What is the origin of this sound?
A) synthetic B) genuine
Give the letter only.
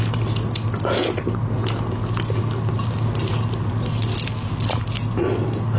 B